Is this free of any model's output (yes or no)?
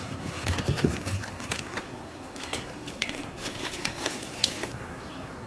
no